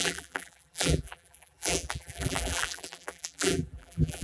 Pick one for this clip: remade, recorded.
remade